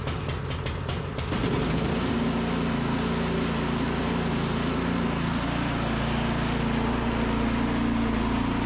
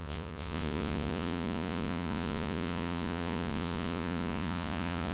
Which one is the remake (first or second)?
second